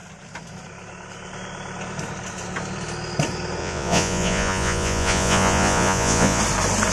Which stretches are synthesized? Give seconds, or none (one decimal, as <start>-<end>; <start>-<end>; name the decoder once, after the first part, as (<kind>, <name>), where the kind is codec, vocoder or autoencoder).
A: 3.6-6.4 (vocoder, Vocos)

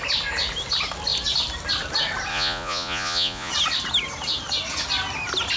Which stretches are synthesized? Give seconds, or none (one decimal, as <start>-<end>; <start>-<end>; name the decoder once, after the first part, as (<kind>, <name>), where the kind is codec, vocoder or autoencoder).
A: 2.3-3.5 (vocoder, Vocos)